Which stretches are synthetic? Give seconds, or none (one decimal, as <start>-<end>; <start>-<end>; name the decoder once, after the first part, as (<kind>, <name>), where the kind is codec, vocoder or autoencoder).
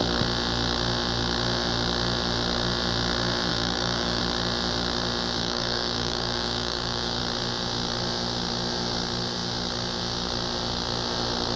3.5-4.2 (codec, DAC); 5.4-7.2